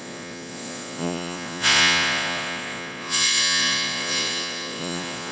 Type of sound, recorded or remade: remade